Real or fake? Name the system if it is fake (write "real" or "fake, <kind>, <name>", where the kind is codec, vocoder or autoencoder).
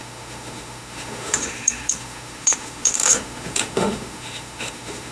fake, autoencoder, DAC-VAE